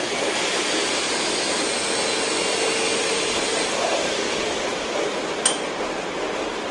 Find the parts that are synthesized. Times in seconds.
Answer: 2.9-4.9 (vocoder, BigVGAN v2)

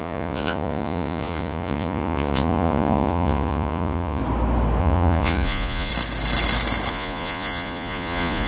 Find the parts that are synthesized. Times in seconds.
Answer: 0.0-4.2 (vocoder, Vocos); 4.8-5.9; 6.9-8.5

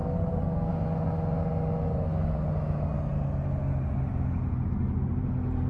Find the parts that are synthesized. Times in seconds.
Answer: 0.0-0.7 (codec, SNAC)

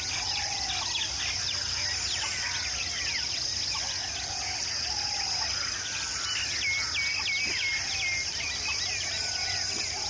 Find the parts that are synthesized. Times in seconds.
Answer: none

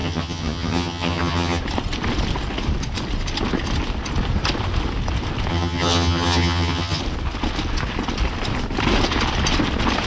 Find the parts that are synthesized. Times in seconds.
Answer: 0.0-1.6 (vocoder, HiFi-GAN); 5.5-7.0

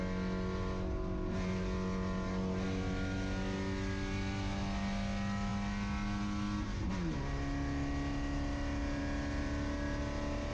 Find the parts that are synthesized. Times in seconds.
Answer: none

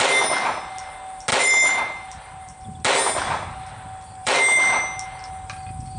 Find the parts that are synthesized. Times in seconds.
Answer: 1.3-2.6 (vocoder, BigVGAN v2); 4.2-4.8